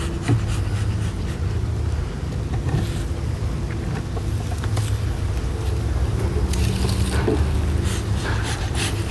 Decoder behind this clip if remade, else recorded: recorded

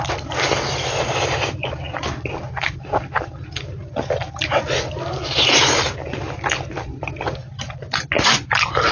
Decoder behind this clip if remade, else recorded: recorded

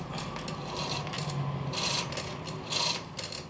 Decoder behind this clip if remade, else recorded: recorded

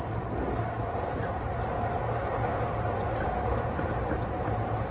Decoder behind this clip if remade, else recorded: recorded